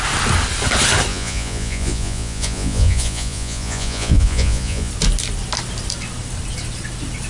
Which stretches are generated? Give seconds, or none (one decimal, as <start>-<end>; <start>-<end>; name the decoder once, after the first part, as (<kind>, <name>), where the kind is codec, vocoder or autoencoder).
1.1-4.9 (vocoder, Vocos)